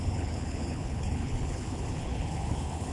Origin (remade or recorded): remade